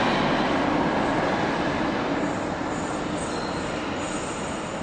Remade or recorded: recorded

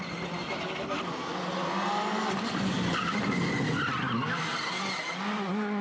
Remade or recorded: recorded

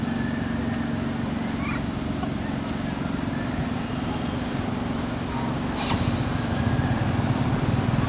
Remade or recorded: recorded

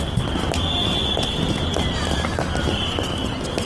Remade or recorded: recorded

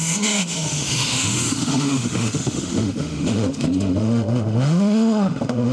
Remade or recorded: remade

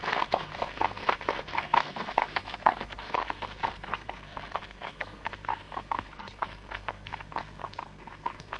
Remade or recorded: remade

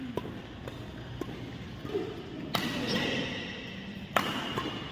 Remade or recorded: recorded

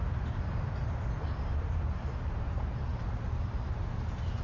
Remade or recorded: recorded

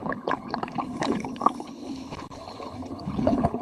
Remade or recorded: remade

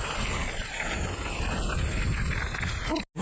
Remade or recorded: recorded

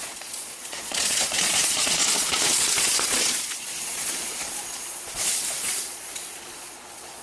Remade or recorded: remade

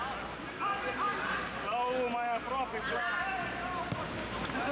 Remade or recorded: recorded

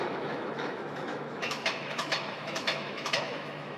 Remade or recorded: remade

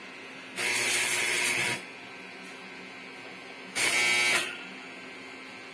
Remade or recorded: recorded